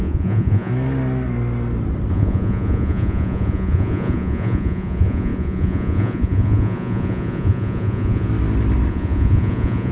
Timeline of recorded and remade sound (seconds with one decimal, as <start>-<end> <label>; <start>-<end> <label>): 0.0-0.7 remade; 0.7-2.1 recorded; 2.1-8.3 remade; 8.3-8.9 recorded; 8.9-9.9 remade